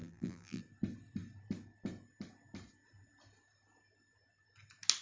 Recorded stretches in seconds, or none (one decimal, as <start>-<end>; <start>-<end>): 0.6-5.0